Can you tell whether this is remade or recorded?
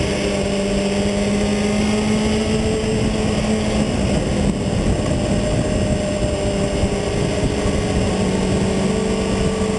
recorded